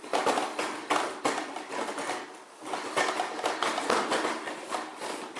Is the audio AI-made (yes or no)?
no